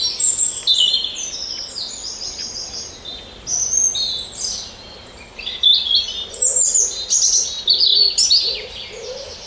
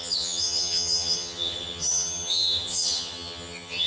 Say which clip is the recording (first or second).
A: first